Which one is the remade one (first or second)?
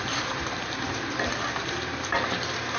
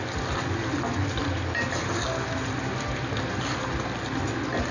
first